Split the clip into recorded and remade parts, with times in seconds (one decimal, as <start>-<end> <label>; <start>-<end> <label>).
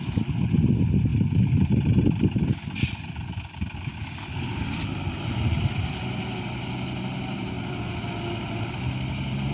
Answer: 0.0-1.1 recorded; 1.1-2.5 remade; 2.5-3.9 recorded; 3.9-6.2 remade; 6.2-9.5 recorded